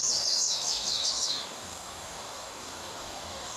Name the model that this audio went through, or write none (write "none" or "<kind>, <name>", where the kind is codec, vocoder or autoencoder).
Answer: codec, DAC